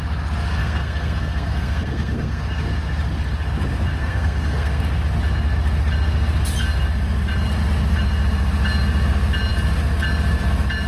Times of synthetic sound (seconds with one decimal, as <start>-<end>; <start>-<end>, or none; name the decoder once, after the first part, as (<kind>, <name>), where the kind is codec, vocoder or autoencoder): 0.6-2.4 (codec, SNAC); 4.0-4.8

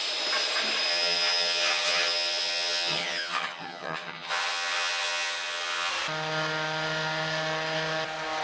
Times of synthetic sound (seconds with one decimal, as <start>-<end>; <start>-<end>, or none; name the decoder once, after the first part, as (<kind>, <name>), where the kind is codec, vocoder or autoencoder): 0.9-5.9 (vocoder, HiFi-GAN)

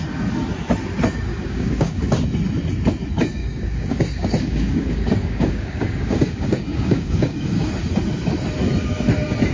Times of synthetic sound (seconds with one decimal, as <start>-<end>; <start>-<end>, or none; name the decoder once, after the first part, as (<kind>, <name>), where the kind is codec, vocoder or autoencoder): 1.3-2.1 (codec, DAC); 3.4-7.7

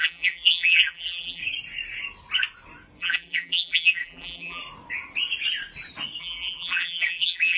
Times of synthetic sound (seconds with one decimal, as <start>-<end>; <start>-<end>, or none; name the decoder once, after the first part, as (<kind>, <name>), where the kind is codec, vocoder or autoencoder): 0.0-1.4 (vocoder, BigVGAN v2); 3.0-4.6; 6.2-7.6